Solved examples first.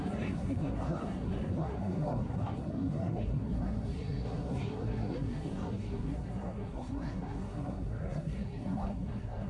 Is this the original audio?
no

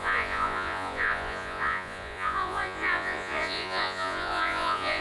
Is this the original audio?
no